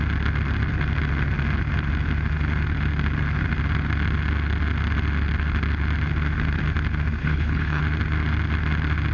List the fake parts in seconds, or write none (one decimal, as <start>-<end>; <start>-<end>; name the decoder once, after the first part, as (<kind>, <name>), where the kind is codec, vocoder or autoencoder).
7.2-7.8 (codec, HILCodec)